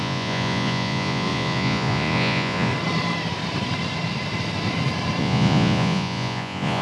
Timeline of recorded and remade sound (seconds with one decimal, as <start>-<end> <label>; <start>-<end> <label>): 0.0-2.7 remade; 2.7-5.2 recorded; 5.2-6.8 remade